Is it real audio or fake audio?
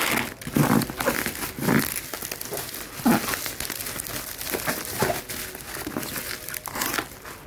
real